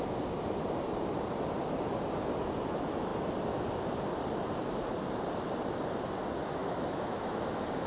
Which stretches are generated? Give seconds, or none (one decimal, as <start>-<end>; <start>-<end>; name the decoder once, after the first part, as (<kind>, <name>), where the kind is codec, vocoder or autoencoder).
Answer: 6.6-7.4 (autoencoder, DAC-VAE)